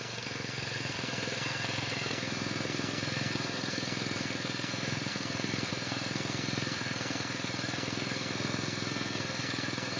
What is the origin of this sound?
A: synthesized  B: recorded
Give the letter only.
A